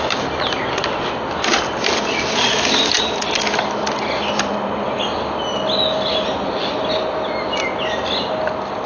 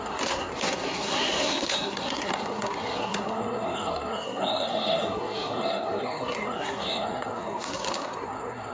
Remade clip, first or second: second